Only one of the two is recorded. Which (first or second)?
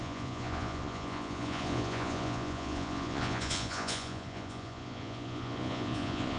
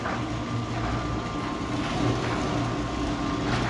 second